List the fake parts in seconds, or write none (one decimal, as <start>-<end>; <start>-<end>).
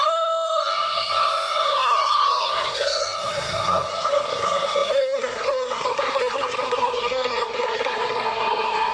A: 0.0-8.9